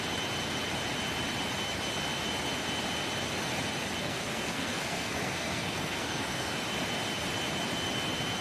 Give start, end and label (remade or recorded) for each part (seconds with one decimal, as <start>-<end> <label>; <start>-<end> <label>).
0.0-4.0 recorded; 4.0-6.5 remade; 6.5-8.4 recorded